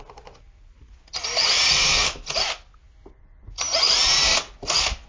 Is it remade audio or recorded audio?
recorded